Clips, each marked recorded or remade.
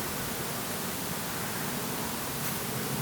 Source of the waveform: recorded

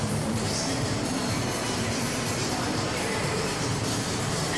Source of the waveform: remade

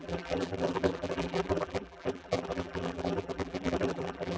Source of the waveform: remade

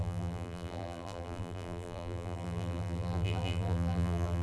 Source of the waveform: remade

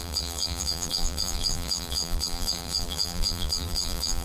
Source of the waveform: remade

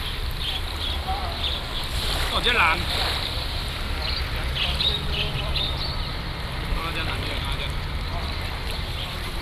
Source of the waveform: remade